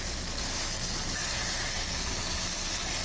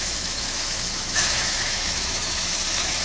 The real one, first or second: first